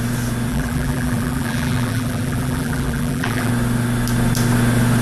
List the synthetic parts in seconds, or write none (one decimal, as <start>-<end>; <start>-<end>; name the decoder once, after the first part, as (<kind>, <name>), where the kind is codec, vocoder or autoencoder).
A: 0.5-3.5 (vocoder, BigVGAN v2)